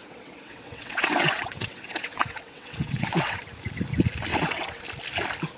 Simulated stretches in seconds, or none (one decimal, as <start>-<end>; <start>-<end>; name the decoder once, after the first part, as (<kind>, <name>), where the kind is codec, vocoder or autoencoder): 0.0-3.4 (vocoder, WaveNeXt); 4.3-4.8